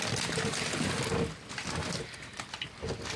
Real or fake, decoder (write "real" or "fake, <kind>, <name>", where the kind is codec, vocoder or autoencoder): fake, vocoder, BigVGAN v2